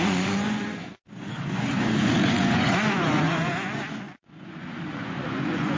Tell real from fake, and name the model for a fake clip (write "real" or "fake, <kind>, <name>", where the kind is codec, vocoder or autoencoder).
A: fake, vocoder, Vocos